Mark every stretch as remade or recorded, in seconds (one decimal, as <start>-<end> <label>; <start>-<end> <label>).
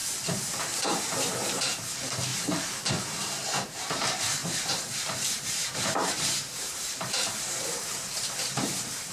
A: 0.0-0.6 recorded; 0.6-2.3 remade; 2.3-2.9 recorded; 2.9-9.1 remade